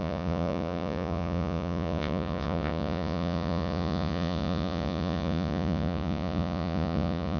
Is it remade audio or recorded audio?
remade